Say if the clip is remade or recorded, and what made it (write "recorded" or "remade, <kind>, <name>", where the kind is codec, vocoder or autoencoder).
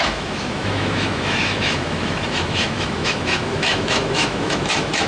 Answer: remade, autoencoder, DAC-VAE